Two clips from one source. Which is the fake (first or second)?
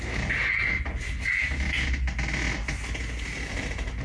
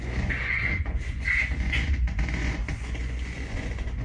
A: second